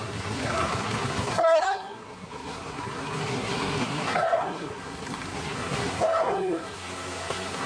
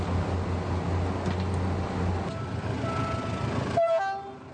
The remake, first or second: first